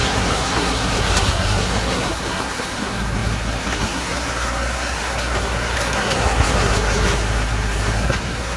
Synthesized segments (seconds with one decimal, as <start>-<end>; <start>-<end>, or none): 0.0-8.6